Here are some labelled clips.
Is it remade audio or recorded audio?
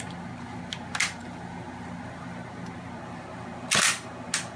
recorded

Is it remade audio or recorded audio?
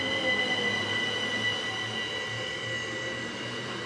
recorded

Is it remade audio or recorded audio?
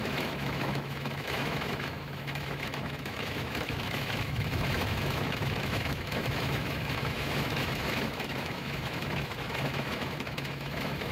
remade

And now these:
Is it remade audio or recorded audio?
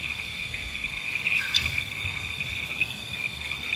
remade